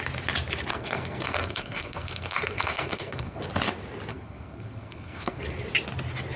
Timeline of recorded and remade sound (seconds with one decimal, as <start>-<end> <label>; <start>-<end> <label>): 0.0-0.7 recorded; 0.7-3.4 remade; 3.4-4.1 recorded; 4.1-5.4 remade; 5.4-6.4 recorded